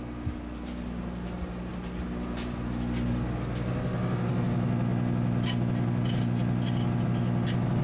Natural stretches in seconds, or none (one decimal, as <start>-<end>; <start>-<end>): 0.0-7.8